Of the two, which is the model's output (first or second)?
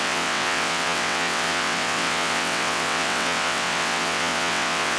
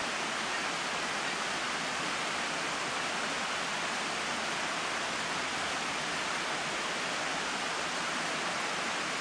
first